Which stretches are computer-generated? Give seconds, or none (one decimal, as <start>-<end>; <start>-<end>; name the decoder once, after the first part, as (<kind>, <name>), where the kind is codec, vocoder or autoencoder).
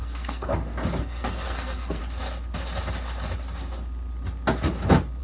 0.0-0.5 (codec, SNAC); 1.0-2.0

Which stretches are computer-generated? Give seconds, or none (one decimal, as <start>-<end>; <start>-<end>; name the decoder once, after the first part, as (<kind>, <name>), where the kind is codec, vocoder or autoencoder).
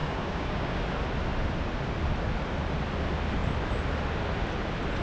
0.0-0.8 (codec, DAC)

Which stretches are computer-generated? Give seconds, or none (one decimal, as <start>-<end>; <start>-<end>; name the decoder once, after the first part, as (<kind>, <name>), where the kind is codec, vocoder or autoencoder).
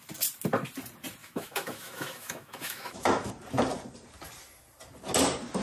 1.2-3.3 (autoencoder, DAC-VAE)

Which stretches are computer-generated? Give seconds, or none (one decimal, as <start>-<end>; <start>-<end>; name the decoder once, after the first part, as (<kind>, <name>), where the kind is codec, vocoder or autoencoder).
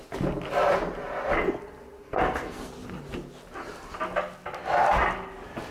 2.0-2.7 (codec, SNAC)